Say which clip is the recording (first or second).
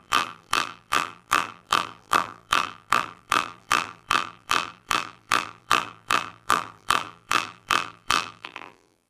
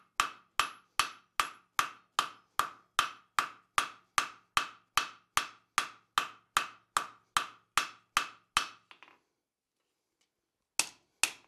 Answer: second